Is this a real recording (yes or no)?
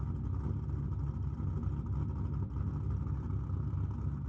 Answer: yes